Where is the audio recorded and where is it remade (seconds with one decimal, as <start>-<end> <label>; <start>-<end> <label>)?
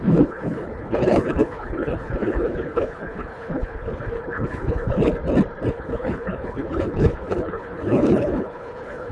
0.0-5.1 remade; 5.1-5.7 recorded; 5.7-9.1 remade